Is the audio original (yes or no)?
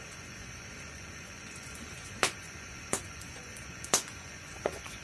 no